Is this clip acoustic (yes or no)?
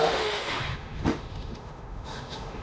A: no